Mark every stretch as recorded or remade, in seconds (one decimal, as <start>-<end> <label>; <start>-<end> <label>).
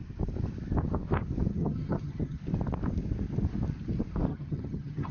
0.0-1.5 recorded; 1.5-2.4 remade; 2.4-4.3 recorded; 4.3-5.1 remade